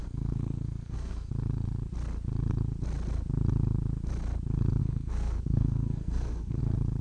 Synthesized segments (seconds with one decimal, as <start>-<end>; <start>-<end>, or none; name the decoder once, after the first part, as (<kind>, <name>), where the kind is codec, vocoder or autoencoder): 0.0-1.3 (codec, SNAC); 4.8-6.6